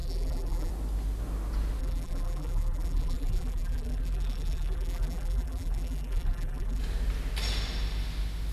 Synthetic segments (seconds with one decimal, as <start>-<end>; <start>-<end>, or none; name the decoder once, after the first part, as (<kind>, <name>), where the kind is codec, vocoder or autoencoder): 0.0-0.7 (vocoder, BigVGAN v2); 1.8-6.8